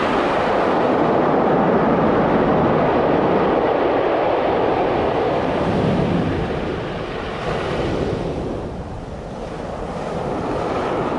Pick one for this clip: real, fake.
real